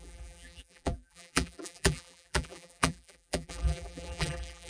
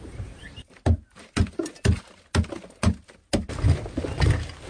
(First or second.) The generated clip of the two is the first